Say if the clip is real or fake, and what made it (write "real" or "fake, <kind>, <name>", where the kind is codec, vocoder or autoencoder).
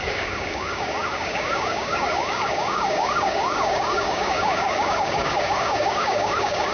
fake, codec, DAC